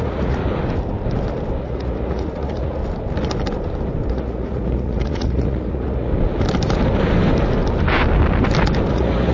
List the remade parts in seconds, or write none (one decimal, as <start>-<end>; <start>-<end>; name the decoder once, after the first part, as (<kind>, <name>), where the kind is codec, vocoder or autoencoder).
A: 0.0-0.4 (vocoder, Vocos); 1.6-2.8; 4.1-6.1; 8.9-9.3